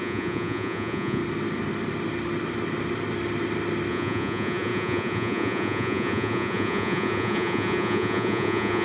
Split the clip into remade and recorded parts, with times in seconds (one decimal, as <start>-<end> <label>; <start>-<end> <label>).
0.0-1.2 remade; 1.2-3.9 recorded; 3.9-8.8 remade